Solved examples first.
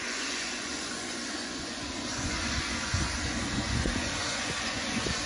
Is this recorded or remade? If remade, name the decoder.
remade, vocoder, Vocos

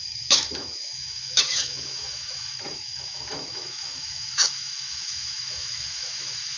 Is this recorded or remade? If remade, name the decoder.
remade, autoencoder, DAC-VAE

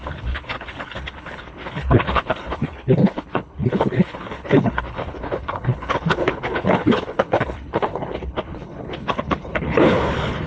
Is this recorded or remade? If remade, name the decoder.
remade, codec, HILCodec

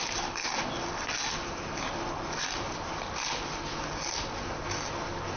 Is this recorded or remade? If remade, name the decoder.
recorded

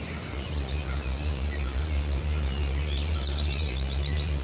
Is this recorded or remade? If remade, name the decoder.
remade, vocoder, Vocos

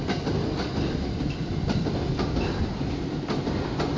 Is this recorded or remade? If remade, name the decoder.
recorded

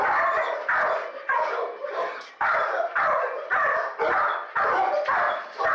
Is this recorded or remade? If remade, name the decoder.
remade, vocoder, BigVGAN v2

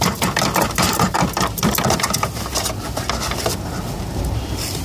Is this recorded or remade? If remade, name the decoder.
recorded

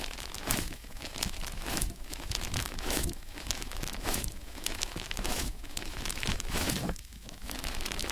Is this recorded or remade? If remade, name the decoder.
remade, autoencoder, DAC-VAE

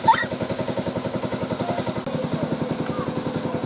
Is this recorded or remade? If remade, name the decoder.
recorded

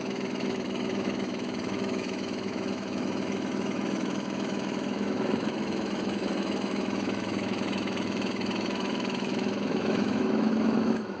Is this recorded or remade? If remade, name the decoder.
remade, autoencoder, DAC-VAE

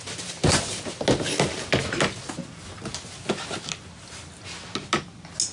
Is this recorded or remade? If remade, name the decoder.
recorded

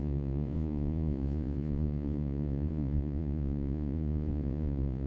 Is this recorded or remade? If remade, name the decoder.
remade, vocoder, Vocos